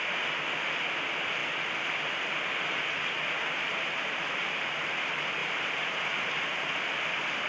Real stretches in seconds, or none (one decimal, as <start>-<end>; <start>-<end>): 0.0-5.4; 6.3-7.5